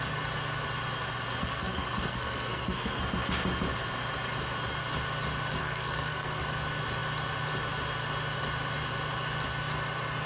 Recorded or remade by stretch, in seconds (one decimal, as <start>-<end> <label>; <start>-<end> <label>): 0.0-1.4 recorded; 1.4-3.0 remade; 3.0-5.6 recorded; 5.6-6.4 remade; 6.4-10.3 recorded